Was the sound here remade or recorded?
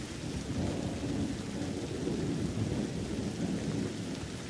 recorded